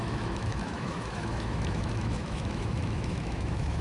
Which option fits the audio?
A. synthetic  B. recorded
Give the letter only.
A